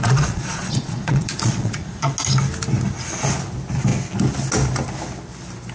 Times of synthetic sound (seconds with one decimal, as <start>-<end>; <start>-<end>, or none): 0.0-2.1